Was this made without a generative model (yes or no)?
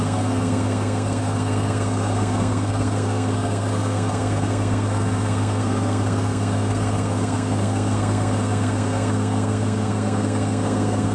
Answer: no